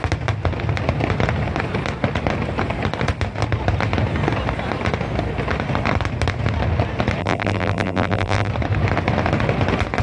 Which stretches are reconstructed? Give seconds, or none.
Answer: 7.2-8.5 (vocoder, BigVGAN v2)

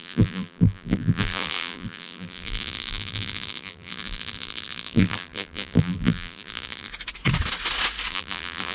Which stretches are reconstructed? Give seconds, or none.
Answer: 0.0-6.9 (vocoder, BigVGAN v2); 8.1-8.7

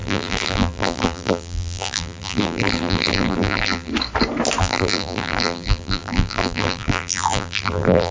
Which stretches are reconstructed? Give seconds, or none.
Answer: 0.0-3.9 (vocoder, BigVGAN v2); 4.6-8.1

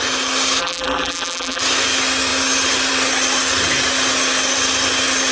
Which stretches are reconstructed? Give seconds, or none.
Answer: 0.6-1.6 (vocoder, BigVGAN v2)